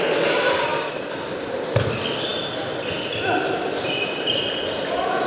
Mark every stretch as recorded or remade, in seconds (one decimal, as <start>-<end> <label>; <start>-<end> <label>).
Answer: 0.0-5.3 recorded